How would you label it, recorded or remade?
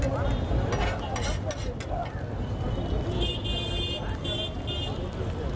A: recorded